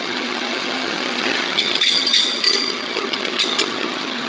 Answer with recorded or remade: remade